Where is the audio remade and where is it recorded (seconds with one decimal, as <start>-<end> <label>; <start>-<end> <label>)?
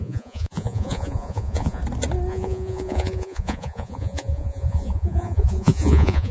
0.0-1.8 remade; 1.8-2.3 recorded; 2.3-6.3 remade